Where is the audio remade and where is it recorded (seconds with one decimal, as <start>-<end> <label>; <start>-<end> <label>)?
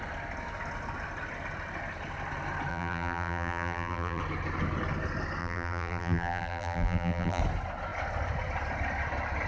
0.0-2.7 recorded; 2.7-4.2 remade; 4.2-5.4 recorded; 5.4-7.4 remade; 7.4-9.5 recorded